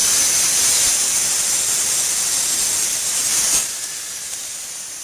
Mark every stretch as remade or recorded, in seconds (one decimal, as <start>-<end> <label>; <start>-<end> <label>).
0.0-3.0 recorded; 3.0-5.0 remade